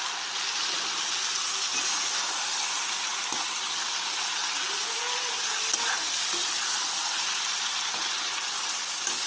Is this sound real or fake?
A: real